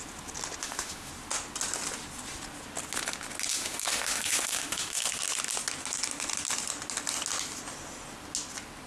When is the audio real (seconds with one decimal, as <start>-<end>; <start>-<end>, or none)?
0.0-0.6; 1.1-3.5; 5.2-8.9